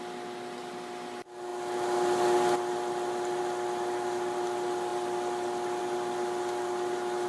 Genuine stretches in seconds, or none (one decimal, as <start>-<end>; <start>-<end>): 0.0-7.3